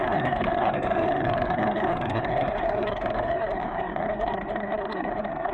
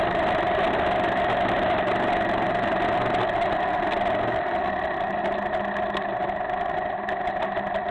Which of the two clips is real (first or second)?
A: second